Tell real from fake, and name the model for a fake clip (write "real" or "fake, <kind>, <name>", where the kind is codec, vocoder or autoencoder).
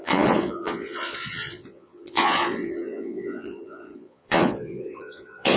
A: fake, vocoder, Vocos